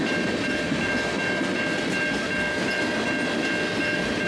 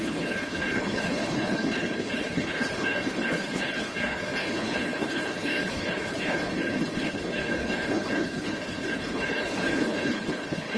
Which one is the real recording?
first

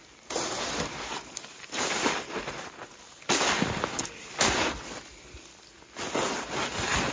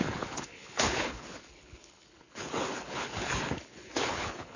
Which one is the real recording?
first